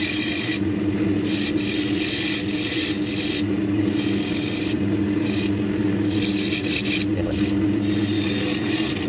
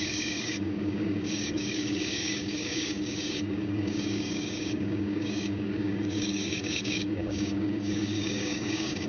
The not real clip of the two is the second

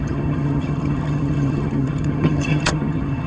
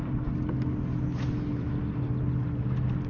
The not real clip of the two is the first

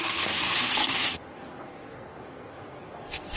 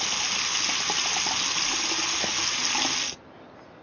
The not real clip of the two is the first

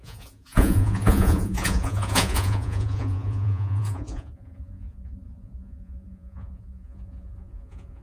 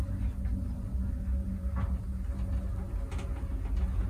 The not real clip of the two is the first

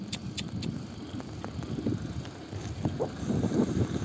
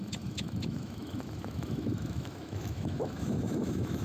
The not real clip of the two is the second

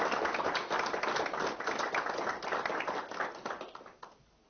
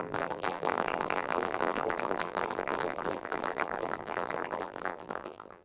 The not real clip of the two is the second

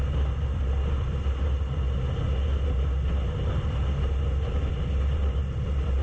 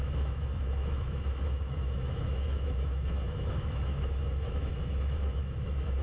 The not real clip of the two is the second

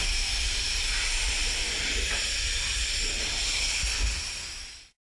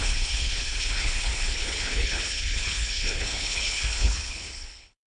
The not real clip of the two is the second